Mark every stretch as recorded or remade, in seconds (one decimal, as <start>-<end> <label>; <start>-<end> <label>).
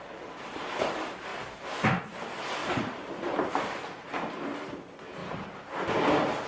0.0-1.3 recorded; 1.3-2.0 remade; 2.0-2.6 recorded; 2.6-3.5 remade; 3.5-6.5 recorded